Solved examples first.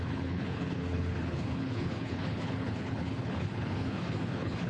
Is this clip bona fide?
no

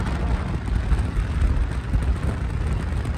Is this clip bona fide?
yes